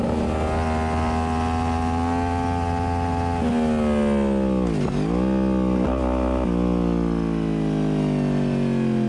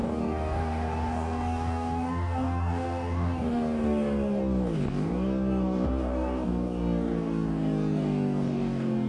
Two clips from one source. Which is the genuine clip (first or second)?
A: first